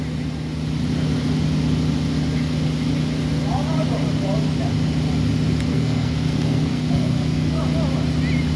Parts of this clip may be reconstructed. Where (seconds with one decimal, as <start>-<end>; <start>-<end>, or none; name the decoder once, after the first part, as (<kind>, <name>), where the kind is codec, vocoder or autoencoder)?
5.7-7.6 (codec, SNAC)